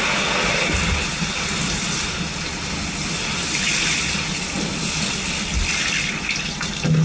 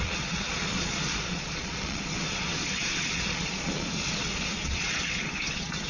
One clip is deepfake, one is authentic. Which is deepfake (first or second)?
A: second